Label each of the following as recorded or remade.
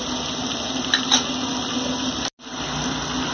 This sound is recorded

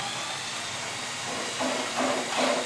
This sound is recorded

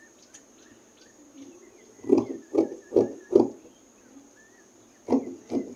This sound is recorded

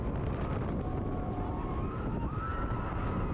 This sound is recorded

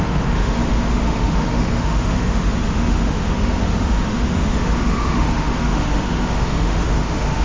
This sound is remade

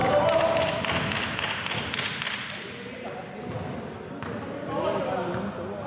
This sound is recorded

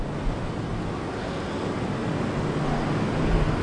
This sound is recorded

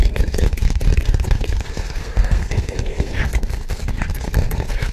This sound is remade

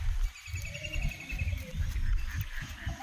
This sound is recorded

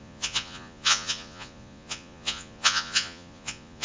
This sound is remade